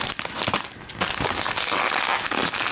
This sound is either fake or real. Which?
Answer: real